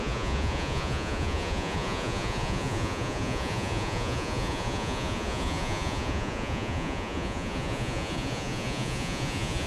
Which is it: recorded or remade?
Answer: remade